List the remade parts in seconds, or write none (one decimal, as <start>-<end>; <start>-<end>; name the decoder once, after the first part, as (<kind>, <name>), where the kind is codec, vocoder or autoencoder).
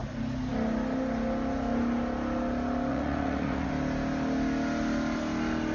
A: 2.9-3.7 (vocoder, Vocos)